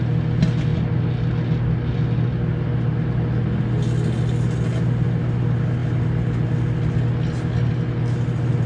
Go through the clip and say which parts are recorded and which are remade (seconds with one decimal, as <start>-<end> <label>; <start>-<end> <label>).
0.0-8.7 recorded